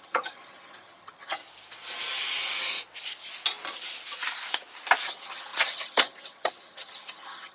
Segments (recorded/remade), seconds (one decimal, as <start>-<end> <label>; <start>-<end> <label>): 0.0-1.4 remade; 1.4-5.0 recorded; 5.0-7.5 remade